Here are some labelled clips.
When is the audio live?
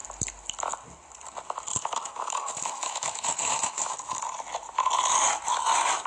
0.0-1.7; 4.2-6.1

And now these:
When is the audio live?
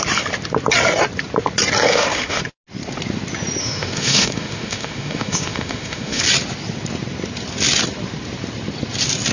0.0-1.9; 2.4-3.6; 6.2-9.3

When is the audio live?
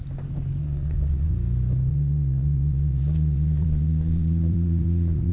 0.0-0.6; 1.3-1.9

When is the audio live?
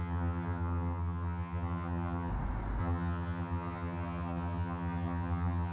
2.3-2.8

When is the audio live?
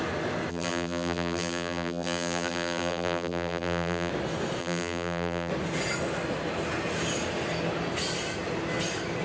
0.0-0.5; 4.1-4.6; 5.5-9.2